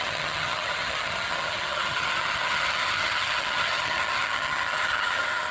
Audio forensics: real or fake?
fake